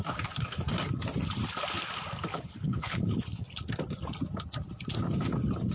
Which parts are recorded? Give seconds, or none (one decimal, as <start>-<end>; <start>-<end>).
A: 0.0-2.3; 3.5-5.7